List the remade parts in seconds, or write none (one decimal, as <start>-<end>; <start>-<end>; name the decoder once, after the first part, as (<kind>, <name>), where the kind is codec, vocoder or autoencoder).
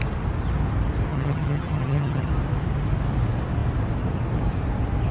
1.1-2.3 (vocoder, HiFi-GAN)